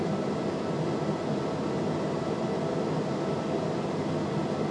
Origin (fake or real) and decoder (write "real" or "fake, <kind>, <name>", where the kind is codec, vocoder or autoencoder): real